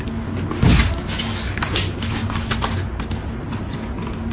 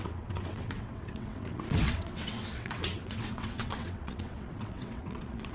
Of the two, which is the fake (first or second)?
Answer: second